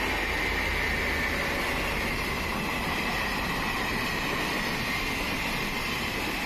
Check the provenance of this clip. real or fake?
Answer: real